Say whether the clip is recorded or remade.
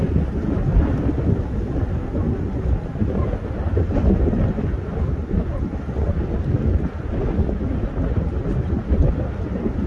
recorded